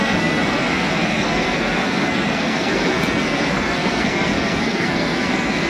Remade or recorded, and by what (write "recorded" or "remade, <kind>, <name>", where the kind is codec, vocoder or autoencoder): remade, codec, SNAC